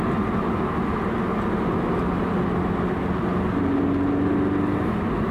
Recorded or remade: recorded